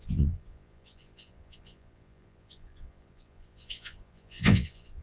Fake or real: fake